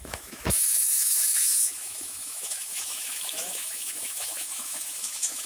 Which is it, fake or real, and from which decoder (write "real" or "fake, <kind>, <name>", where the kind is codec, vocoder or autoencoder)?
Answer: fake, autoencoder, DAC-VAE